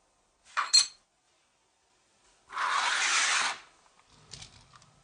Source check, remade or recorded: recorded